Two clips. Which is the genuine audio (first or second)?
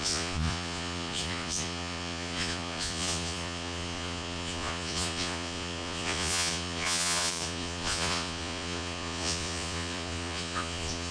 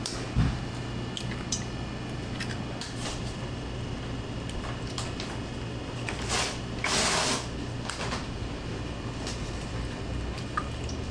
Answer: second